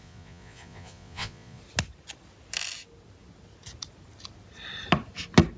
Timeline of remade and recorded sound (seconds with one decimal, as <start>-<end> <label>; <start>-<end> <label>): 0.0-1.6 remade; 1.6-5.6 recorded

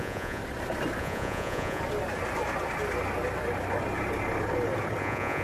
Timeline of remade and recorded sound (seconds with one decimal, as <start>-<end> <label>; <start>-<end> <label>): 0.0-0.4 remade; 0.4-1.0 recorded; 1.0-1.8 remade; 1.8-5.0 recorded; 5.0-5.4 remade

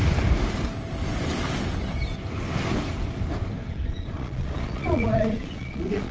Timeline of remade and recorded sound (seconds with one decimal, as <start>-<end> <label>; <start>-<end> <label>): 0.0-3.7 recorded; 3.7-6.1 remade

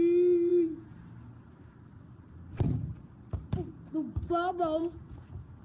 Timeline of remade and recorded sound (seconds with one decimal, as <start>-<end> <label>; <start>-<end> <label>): 0.0-4.8 recorded; 4.8-5.6 remade

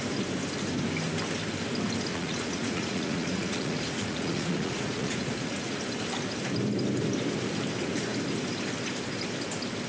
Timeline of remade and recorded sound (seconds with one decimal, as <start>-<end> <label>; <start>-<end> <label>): 0.0-2.1 recorded; 2.1-5.8 remade; 5.8-9.9 recorded

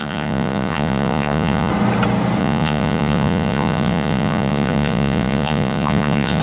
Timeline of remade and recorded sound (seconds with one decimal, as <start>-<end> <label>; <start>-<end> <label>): 0.0-1.7 remade; 1.7-2.4 recorded; 2.4-6.4 remade

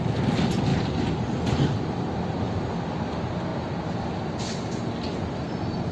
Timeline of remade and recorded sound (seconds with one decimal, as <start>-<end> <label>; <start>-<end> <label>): 0.0-5.9 recorded